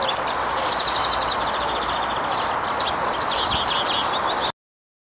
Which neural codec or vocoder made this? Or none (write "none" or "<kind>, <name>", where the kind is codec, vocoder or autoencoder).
none